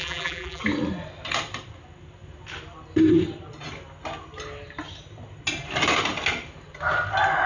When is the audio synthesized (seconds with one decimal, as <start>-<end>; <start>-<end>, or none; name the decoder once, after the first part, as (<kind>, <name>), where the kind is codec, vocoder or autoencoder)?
0.0-0.6 (vocoder, BigVGAN v2)